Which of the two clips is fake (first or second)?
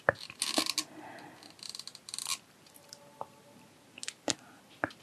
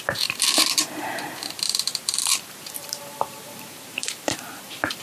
second